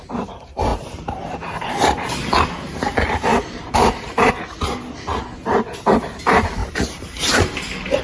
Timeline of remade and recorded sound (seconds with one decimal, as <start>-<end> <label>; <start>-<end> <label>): 0.0-3.3 recorded; 3.3-4.3 remade; 4.3-6.6 recorded; 6.6-8.0 remade